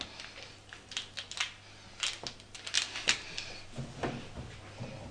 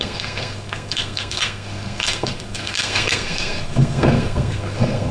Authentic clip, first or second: first